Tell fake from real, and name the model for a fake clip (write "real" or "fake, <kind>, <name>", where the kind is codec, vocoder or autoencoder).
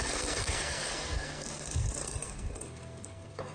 fake, codec, SNAC